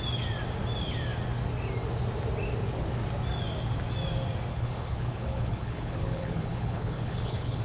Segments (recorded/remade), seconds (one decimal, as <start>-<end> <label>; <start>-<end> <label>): 0.0-4.5 recorded; 4.5-7.6 remade